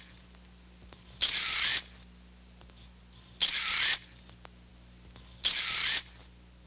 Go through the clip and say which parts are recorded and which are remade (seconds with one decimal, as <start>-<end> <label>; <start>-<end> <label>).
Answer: 0.0-6.7 recorded

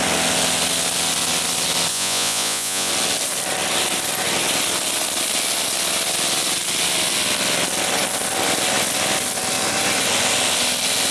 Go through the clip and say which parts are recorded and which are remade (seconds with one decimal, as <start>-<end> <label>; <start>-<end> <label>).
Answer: 0.0-1.9 recorded; 1.9-2.9 remade; 2.9-11.1 recorded

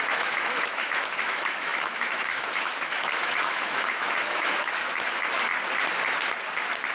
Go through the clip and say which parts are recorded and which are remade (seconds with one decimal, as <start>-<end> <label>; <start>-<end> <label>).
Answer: 0.0-5.5 remade; 5.5-6.9 recorded

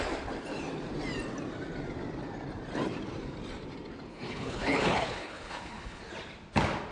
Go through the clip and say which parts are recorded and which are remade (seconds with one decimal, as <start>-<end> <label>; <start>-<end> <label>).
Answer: 0.0-4.1 recorded; 4.1-6.0 remade; 6.0-6.9 recorded

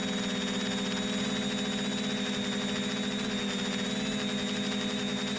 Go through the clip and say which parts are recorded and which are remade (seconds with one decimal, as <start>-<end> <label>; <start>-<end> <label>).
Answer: 0.0-5.4 recorded

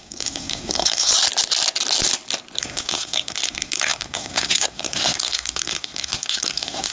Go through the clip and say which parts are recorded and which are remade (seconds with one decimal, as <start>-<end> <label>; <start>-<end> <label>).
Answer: 0.0-1.1 remade; 1.1-2.6 recorded; 2.6-6.9 remade

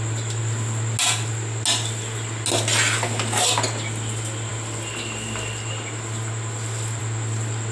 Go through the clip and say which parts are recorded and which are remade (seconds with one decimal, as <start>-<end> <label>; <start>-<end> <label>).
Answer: 0.0-7.7 recorded

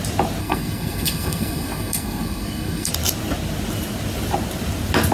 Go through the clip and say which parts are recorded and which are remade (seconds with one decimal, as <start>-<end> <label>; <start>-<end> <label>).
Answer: 0.0-0.4 recorded; 0.4-2.9 remade; 2.9-5.1 recorded